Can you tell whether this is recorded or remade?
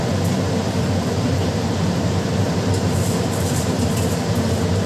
remade